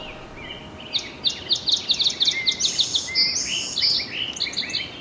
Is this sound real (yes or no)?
yes